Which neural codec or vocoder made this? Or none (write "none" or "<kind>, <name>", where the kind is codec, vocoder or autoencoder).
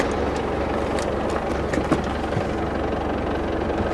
none